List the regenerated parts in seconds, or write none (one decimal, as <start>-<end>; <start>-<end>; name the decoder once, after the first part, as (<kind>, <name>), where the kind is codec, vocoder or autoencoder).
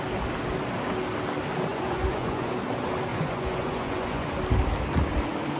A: 1.7-2.5 (vocoder, Vocos); 3.1-4.3